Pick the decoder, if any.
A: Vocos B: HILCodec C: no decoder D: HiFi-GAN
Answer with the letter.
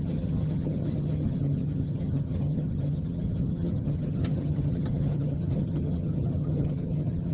D